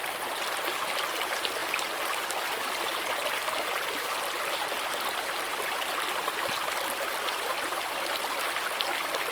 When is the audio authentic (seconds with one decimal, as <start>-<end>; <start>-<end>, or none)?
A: 0.0-9.3